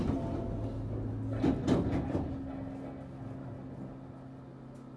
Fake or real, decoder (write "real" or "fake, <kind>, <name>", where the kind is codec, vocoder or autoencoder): real